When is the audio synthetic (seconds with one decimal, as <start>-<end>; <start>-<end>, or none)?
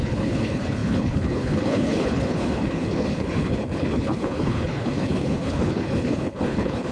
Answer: 0.0-6.9